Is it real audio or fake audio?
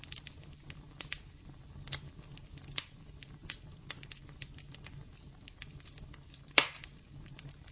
real